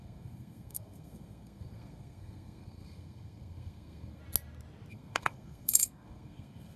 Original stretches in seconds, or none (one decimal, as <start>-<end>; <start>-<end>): 4.2-4.9